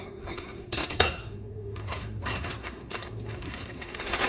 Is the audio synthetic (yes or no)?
yes